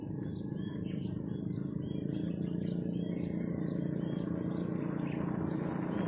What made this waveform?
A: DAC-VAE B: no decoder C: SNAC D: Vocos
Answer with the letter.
B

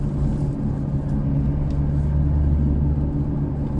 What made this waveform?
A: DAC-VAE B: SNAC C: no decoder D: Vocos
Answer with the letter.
C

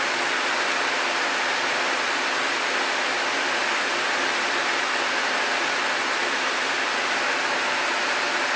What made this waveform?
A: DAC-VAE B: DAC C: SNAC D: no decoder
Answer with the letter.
D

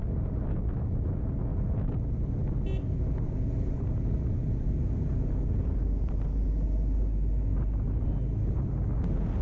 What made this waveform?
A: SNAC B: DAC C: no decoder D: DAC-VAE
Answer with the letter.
C